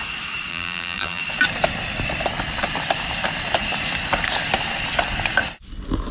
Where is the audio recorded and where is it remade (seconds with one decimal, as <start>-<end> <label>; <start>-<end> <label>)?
0.0-0.5 recorded; 0.5-1.2 remade; 1.2-6.1 recorded